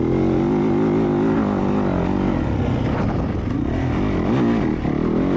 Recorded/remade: recorded